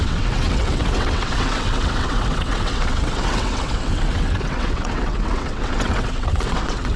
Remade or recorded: remade